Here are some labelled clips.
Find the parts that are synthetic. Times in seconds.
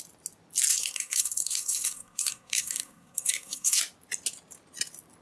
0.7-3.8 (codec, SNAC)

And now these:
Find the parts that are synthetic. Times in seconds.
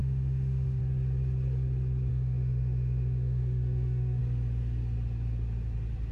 0.0-0.8 (autoencoder, DAC-VAE); 2.1-4.2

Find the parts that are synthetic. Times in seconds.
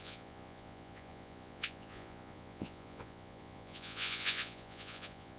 0.0-5.4 (vocoder, Vocos)